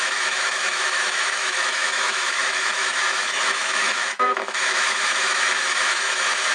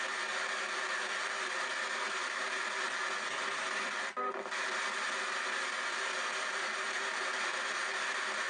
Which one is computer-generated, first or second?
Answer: first